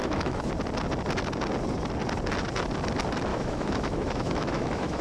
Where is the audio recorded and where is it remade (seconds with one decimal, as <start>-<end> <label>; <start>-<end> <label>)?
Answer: 0.0-0.5 remade; 0.5-3.3 recorded; 3.3-5.0 remade